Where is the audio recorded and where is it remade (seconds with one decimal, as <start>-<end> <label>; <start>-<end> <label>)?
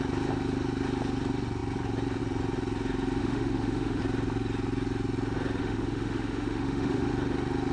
0.0-3.2 recorded; 3.2-4.0 remade; 4.0-5.6 recorded; 5.6-7.1 remade; 7.1-7.7 recorded